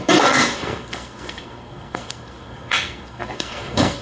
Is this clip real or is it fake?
fake